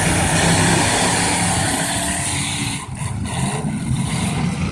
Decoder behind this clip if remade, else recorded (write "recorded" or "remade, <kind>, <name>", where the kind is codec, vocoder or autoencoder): remade, vocoder, BigVGAN v2